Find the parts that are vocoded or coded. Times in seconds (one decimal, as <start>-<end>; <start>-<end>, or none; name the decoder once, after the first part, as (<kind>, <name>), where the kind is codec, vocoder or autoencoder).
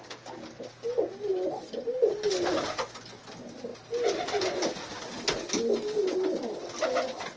none